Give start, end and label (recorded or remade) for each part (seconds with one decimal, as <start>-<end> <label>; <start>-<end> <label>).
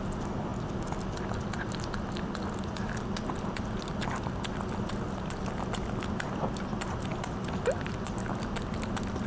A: 0.0-9.3 recorded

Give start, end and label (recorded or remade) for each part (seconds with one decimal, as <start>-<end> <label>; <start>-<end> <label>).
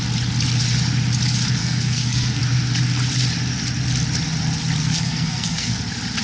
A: 0.0-1.6 recorded; 1.6-2.4 remade; 2.4-4.8 recorded; 4.8-5.8 remade; 5.8-6.2 recorded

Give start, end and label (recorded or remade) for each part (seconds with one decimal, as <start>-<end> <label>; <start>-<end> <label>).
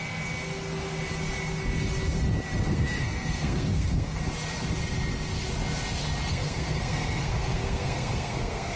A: 0.0-2.7 recorded; 2.7-4.2 remade; 4.2-6.3 recorded; 6.3-8.8 remade